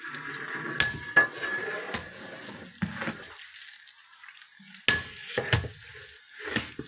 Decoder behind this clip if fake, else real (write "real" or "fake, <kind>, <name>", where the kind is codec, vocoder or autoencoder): real